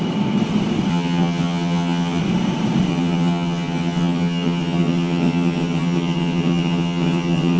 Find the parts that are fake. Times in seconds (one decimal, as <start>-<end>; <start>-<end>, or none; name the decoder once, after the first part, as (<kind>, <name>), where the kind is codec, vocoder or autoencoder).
0.9-2.2 (vocoder, HiFi-GAN); 2.9-7.6